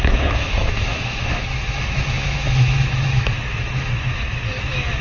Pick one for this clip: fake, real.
fake